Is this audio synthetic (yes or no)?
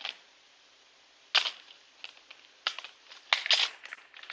no